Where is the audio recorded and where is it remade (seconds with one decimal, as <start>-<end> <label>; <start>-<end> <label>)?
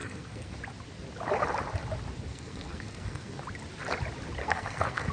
0.0-0.6 remade; 0.6-2.3 recorded; 2.3-3.4 remade; 3.4-4.4 recorded; 4.4-5.1 remade